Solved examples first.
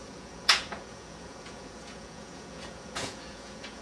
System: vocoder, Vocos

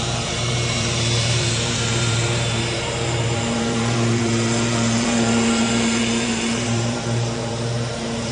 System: vocoder, BigVGAN v2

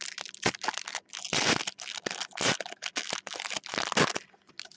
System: none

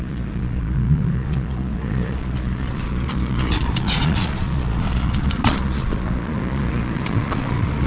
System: vocoder, Vocos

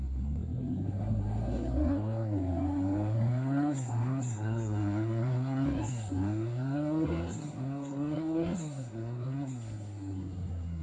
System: codec, SNAC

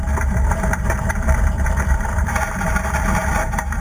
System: vocoder, BigVGAN v2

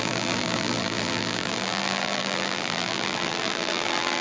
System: vocoder, BigVGAN v2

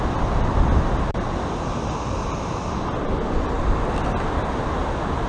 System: none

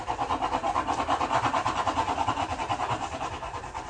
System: none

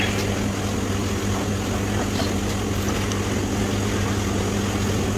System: none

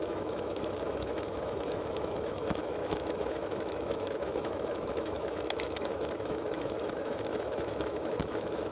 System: autoencoder, DAC-VAE